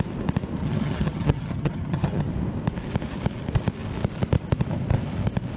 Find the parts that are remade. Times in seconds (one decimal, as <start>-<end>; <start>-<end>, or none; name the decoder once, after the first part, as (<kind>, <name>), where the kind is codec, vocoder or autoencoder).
0.6-2.3 (vocoder, HiFi-GAN)